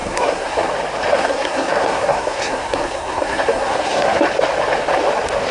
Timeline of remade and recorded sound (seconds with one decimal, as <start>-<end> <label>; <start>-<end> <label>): 0.0-0.7 remade; 0.7-1.1 recorded; 1.1-4.2 remade; 4.2-5.5 recorded